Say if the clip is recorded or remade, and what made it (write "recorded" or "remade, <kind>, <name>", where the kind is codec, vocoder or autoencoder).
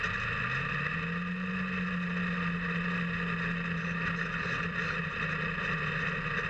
recorded